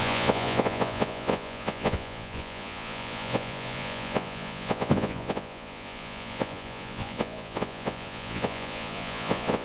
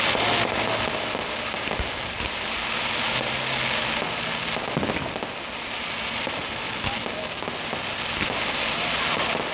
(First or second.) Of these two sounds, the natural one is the second